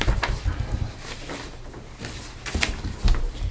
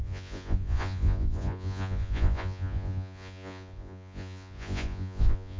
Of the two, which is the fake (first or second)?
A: second